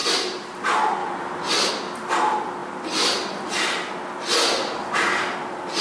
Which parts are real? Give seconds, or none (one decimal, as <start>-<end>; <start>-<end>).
0.0-1.0; 1.7-5.8